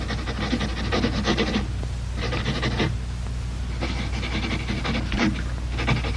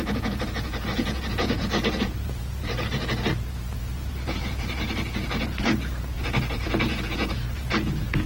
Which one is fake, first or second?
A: second